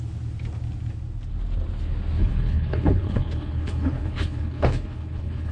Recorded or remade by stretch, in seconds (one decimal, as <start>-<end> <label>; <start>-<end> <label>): 0.0-2.2 recorded; 2.2-5.5 remade